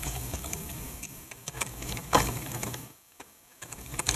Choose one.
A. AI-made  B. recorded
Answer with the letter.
A